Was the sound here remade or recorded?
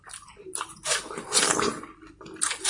recorded